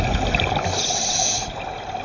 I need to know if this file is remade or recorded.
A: recorded